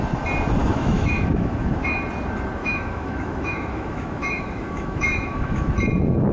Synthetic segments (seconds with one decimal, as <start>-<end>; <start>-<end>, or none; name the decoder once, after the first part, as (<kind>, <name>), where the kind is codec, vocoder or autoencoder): 0.6-2.0 (autoencoder, DAC-VAE); 2.6-5.7